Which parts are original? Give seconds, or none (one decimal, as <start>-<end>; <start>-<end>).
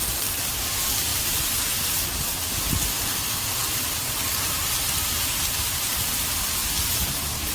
0.0-1.1; 1.6-4.3; 5.9-7.5